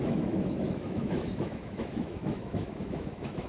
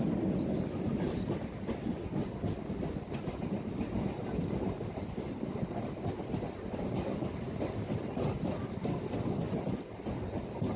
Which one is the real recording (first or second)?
second